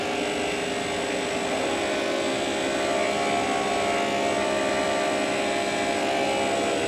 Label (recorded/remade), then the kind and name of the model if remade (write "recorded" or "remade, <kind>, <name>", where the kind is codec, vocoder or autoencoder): recorded